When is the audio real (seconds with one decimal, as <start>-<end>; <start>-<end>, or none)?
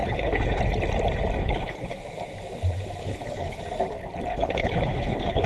0.6-1.4; 2.0-3.0; 3.6-4.3